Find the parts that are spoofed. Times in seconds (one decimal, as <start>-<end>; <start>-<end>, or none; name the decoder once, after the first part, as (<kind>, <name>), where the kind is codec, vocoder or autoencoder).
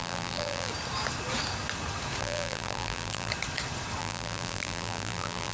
0.0-0.7 (vocoder, BigVGAN v2); 2.2-3.3; 4.0-5.5